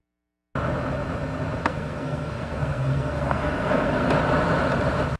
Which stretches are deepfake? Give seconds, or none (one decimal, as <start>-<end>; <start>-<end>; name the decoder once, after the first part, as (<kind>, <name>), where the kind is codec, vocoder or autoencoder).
1.6-4.1 (codec, SNAC)